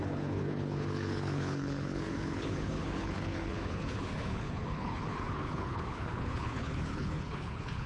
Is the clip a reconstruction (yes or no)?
yes